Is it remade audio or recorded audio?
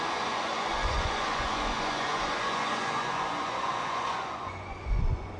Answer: remade